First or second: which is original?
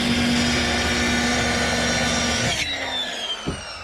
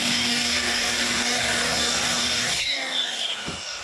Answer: first